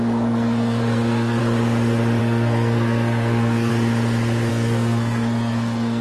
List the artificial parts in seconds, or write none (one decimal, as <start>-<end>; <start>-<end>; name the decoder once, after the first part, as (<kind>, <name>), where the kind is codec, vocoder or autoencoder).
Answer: 0.0-1.4 (codec, SNAC); 2.2-3.7; 4.5-6.0